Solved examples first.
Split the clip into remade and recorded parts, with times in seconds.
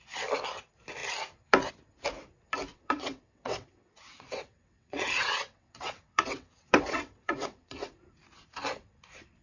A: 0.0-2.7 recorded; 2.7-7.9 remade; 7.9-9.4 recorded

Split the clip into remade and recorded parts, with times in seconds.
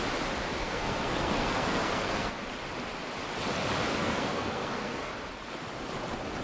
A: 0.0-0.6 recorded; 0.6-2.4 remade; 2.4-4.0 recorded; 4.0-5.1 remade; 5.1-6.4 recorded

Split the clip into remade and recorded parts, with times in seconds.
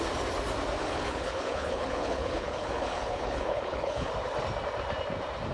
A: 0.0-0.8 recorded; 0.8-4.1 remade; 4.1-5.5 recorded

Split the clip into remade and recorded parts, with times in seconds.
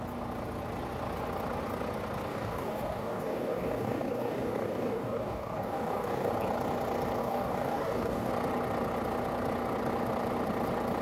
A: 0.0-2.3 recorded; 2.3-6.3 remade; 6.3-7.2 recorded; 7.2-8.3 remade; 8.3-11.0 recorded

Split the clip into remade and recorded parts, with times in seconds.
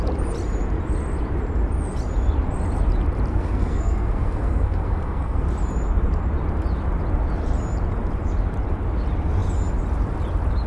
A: 0.0-3.3 recorded; 3.3-5.4 remade; 5.4-10.7 recorded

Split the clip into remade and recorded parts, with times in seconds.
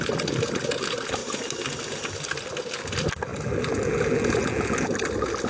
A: 0.0-5.5 recorded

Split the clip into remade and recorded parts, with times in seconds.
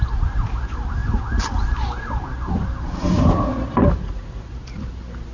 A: 0.0-4.0 recorded; 4.0-4.5 remade; 4.5-5.3 recorded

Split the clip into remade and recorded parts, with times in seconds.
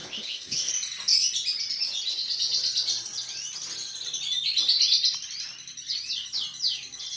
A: 0.0-0.7 remade; 0.7-7.2 recorded